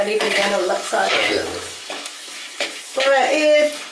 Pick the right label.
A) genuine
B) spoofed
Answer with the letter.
B